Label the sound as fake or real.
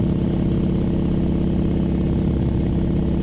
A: real